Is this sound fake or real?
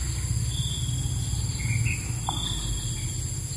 real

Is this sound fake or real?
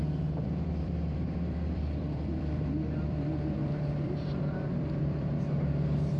fake